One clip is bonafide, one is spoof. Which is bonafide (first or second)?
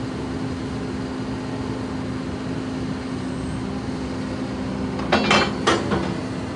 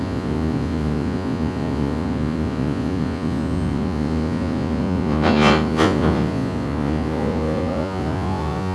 first